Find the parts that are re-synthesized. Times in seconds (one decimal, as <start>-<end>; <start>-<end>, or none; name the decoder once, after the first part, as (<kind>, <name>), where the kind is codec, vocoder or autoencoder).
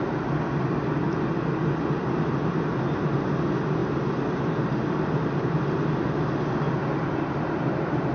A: none